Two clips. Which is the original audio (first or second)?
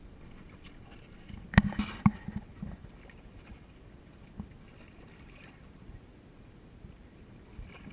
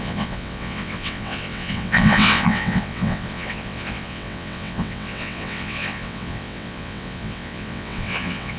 first